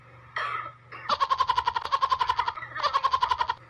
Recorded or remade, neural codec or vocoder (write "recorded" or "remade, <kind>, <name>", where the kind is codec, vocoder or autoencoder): recorded